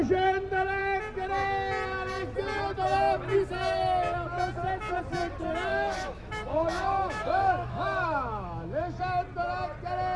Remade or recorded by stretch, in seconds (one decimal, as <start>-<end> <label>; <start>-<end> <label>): 0.0-5.7 recorded; 5.7-9.0 remade; 9.0-10.2 recorded